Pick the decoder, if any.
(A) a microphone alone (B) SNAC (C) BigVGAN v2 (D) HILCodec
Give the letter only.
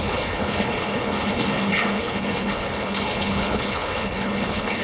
D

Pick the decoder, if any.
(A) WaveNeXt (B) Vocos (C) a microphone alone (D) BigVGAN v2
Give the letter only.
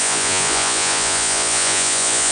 B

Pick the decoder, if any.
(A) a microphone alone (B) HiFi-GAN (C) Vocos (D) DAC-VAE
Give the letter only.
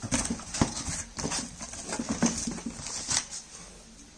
A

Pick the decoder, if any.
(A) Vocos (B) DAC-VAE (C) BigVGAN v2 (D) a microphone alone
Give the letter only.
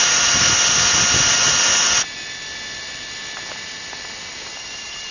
D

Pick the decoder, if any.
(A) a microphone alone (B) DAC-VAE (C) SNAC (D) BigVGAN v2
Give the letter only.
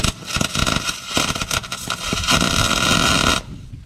A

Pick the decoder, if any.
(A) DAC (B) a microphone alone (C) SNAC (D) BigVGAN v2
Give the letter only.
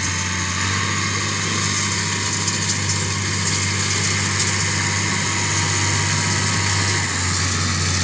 B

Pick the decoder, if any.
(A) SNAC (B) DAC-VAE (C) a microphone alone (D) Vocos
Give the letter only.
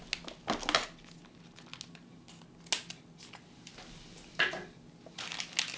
C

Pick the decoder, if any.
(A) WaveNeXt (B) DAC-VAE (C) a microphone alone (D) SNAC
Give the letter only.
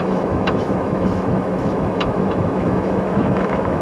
B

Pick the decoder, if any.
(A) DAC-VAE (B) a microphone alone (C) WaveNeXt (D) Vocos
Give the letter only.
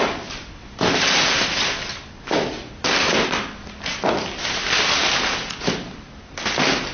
B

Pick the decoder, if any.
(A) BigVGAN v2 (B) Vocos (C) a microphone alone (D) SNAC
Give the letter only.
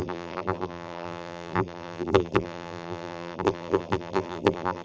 A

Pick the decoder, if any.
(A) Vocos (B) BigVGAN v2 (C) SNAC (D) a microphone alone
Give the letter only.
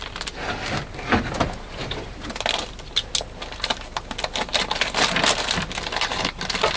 D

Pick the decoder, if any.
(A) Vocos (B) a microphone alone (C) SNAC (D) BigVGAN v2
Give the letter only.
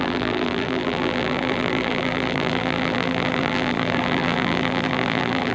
D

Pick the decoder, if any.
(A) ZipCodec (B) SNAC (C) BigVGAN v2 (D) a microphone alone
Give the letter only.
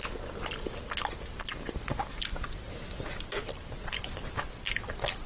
D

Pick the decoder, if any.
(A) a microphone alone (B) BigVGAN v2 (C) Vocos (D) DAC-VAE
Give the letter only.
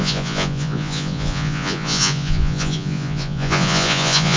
C